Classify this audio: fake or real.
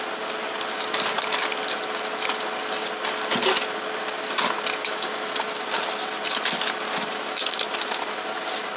real